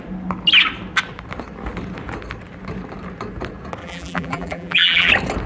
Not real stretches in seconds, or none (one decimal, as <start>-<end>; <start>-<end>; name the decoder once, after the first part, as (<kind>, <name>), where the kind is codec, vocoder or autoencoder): 3.8-5.1 (vocoder, BigVGAN v2)